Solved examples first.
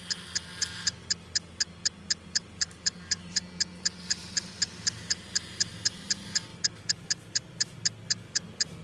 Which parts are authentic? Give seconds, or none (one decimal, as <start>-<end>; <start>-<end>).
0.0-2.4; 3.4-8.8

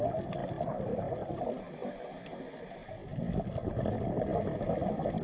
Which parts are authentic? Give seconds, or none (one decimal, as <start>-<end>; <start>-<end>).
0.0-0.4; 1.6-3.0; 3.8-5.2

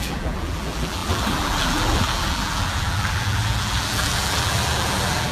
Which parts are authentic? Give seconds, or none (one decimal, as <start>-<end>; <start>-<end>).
none